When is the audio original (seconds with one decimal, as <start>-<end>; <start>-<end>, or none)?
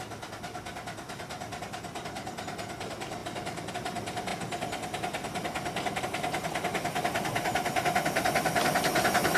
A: 0.0-9.4